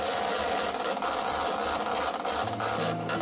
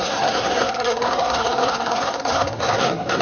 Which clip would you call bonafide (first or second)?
first